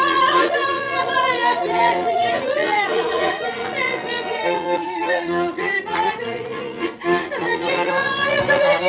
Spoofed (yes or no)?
yes